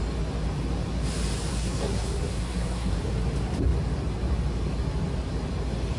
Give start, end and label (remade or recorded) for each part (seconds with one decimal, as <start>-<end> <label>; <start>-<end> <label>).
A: 0.0-1.5 recorded; 1.5-3.0 remade; 3.0-6.0 recorded